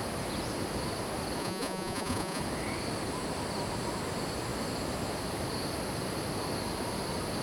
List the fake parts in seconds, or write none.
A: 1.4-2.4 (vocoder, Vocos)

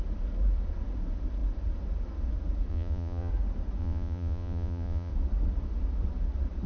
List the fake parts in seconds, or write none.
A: 2.7-3.3 (vocoder, Vocos); 3.8-5.1

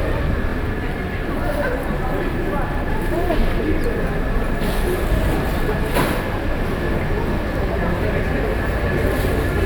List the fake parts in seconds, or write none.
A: none

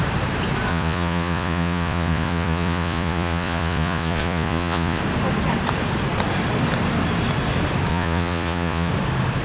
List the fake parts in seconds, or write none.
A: 0.7-5.0 (vocoder, Vocos); 7.9-8.9

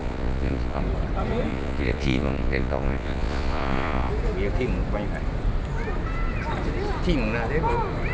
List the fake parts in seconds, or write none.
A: 0.0-0.8 (vocoder, Vocos); 1.5-4.1